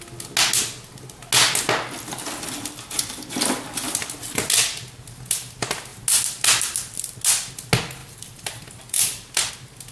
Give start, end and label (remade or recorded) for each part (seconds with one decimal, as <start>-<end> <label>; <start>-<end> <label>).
0.0-8.0 recorded; 8.0-9.5 remade; 9.5-9.9 recorded